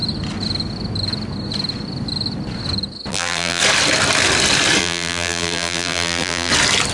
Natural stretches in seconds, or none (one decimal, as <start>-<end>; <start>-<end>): 0.0-3.1; 3.6-4.8; 6.5-6.9